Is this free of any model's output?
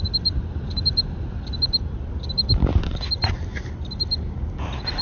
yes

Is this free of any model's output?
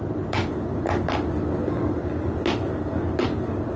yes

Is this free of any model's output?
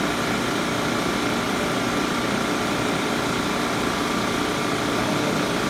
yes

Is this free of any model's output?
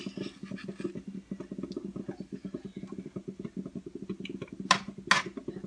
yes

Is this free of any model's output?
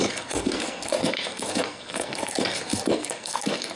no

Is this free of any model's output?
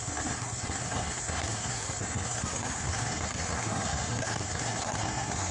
no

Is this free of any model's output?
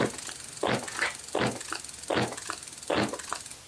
yes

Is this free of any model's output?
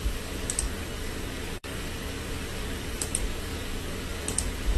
no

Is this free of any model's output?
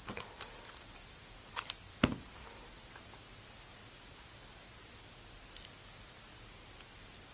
yes